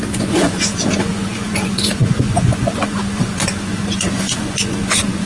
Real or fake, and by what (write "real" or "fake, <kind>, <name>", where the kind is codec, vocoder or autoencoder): fake, vocoder, Vocos